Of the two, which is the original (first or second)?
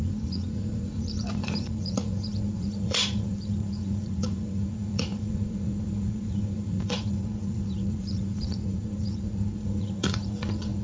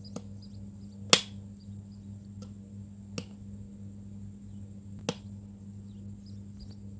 second